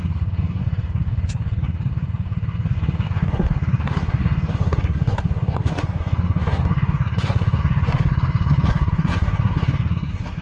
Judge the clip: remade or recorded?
remade